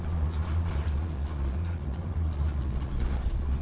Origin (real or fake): fake